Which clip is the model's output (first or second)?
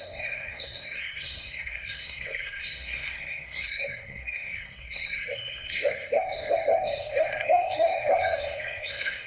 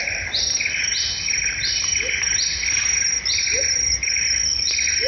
first